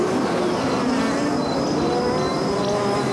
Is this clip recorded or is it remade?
recorded